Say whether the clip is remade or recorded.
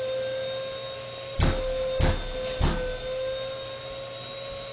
recorded